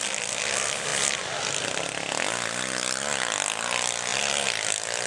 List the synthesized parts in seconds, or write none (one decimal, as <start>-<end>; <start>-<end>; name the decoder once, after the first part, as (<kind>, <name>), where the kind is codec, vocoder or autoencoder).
none